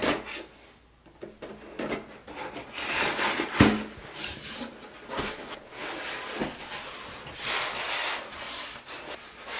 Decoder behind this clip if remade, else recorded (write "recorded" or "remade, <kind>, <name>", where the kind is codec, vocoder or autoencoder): recorded